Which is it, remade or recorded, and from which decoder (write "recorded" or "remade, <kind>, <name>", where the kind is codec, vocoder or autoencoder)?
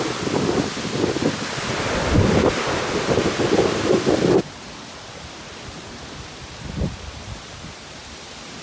recorded